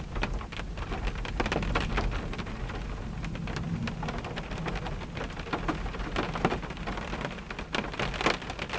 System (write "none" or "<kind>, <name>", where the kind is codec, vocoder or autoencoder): none